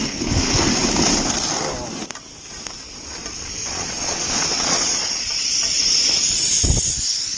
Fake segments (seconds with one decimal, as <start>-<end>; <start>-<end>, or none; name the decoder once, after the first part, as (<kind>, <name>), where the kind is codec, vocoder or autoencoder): 3.6-5.8 (vocoder, Vocos)